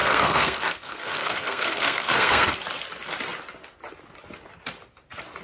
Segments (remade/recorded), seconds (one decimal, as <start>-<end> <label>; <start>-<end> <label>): 0.0-2.5 remade; 2.5-5.4 recorded